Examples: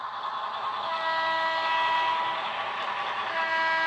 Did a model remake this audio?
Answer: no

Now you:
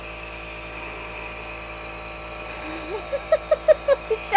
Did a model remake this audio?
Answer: no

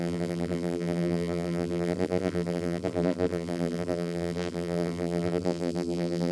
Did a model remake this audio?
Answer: yes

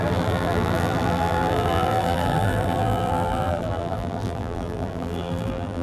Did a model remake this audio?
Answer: yes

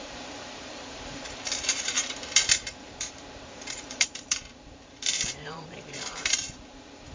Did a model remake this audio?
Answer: yes